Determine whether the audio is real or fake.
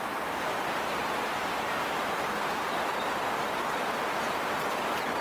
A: real